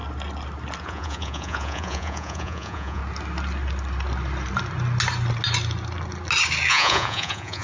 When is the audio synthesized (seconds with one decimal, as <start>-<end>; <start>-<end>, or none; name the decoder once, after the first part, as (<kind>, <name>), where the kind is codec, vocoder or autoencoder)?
0.8-3.0 (vocoder, Vocos); 6.7-7.6